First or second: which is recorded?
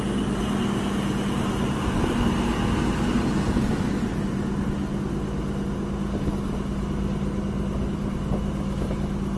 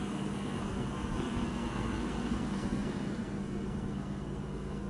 first